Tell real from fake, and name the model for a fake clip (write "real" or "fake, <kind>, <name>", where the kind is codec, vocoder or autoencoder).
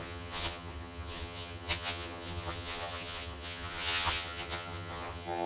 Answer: fake, vocoder, HiFi-GAN